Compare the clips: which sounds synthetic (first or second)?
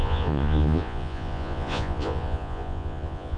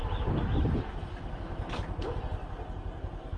first